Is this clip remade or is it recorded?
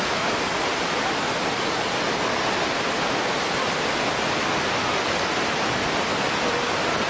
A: recorded